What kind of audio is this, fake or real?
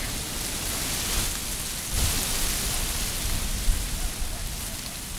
real